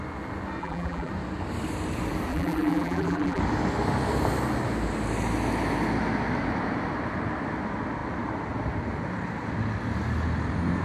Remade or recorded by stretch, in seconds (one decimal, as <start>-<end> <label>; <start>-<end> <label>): 0.0-0.6 recorded; 0.6-1.1 remade; 1.1-2.3 recorded; 2.3-3.4 remade; 3.4-10.8 recorded